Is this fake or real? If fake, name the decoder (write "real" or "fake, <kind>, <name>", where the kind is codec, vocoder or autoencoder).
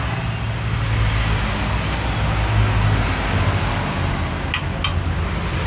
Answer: real